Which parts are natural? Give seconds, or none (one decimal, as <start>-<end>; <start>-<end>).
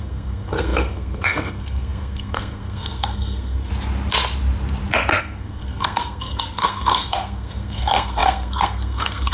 3.7-5.2